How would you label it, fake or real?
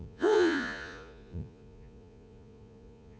fake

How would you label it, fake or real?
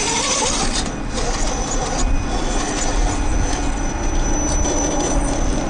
real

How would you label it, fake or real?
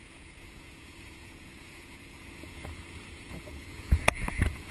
fake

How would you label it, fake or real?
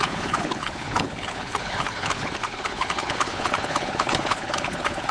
fake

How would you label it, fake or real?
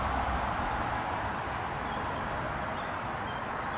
real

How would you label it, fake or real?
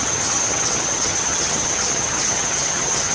fake